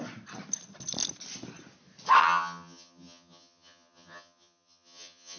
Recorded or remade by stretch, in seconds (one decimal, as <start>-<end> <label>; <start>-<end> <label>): 0.0-2.2 recorded; 2.2-5.4 remade

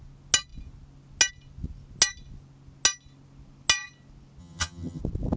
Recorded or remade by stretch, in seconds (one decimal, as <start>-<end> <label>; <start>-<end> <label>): 0.0-4.4 recorded; 4.4-5.0 remade; 5.0-5.4 recorded

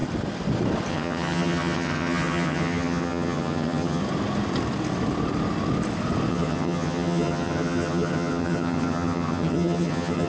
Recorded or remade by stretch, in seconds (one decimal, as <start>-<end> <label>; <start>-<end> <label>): 0.0-0.9 recorded; 0.9-4.0 remade; 4.0-6.3 recorded; 6.3-10.3 remade

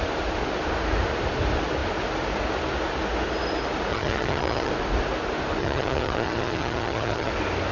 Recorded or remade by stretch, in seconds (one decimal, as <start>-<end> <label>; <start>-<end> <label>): 0.0-3.9 recorded; 3.9-4.7 remade; 4.7-5.6 recorded; 5.6-7.3 remade; 7.3-7.7 recorded

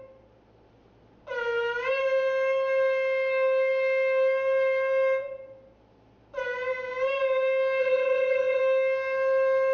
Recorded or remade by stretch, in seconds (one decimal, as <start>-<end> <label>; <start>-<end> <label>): 0.0-7.8 recorded; 7.8-8.6 remade; 8.6-9.7 recorded

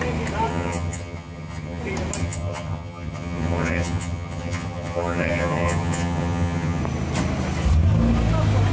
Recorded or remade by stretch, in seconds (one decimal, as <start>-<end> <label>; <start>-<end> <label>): 0.0-0.5 recorded; 0.5-1.8 remade; 1.8-2.2 recorded; 2.2-6.8 remade; 6.8-8.7 recorded

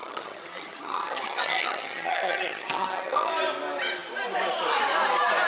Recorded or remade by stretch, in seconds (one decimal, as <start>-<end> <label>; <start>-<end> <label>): 0.0-3.3 remade; 3.3-5.5 recorded